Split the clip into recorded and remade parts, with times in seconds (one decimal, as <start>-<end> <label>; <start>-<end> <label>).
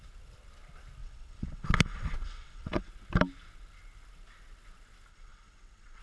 0.0-1.0 recorded; 1.0-2.9 remade; 2.9-5.1 recorded; 5.1-6.0 remade